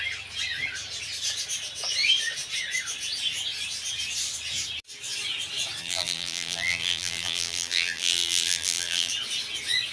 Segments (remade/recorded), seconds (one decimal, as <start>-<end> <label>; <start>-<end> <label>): 0.0-5.8 recorded; 5.8-9.1 remade; 9.1-9.9 recorded